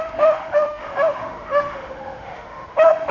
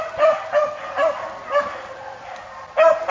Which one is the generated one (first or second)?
first